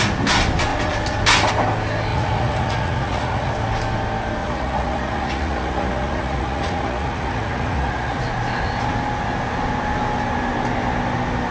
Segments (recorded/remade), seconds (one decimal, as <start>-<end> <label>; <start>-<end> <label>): 0.0-2.1 recorded; 2.1-3.5 remade; 3.5-4.4 recorded; 4.4-8.2 remade; 8.2-11.5 recorded